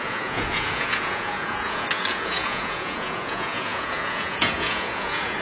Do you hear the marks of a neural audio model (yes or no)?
yes